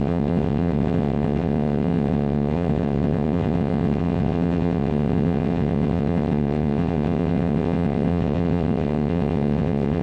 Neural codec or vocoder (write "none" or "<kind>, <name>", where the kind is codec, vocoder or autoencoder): vocoder, WaveNeXt